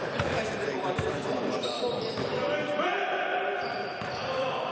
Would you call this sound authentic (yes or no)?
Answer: no